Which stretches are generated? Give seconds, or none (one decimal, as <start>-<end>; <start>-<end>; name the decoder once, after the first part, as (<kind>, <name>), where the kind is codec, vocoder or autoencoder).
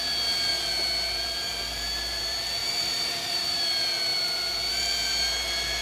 2.6-3.6 (vocoder, BigVGAN v2)